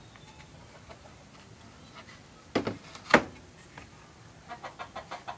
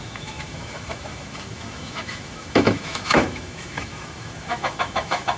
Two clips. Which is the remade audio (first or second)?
second